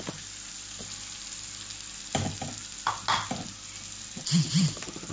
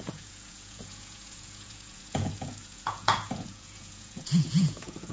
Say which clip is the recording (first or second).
first